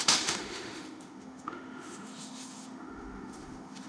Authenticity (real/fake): fake